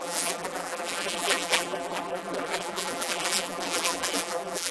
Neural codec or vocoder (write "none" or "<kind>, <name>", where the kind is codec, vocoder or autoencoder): vocoder, BigVGAN v2